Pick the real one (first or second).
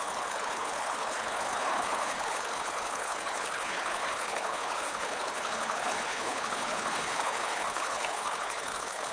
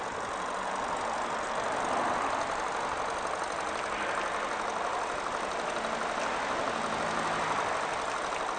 second